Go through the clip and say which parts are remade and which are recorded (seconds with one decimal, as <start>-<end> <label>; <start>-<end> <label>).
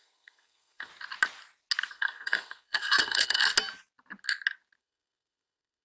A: 0.0-0.9 remade; 0.9-1.9 recorded; 1.9-3.4 remade; 3.4-4.8 recorded; 4.8-5.8 remade